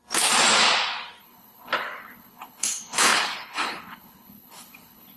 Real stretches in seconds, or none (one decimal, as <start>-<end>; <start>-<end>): 0.0-1.2